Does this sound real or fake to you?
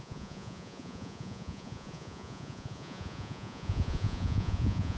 fake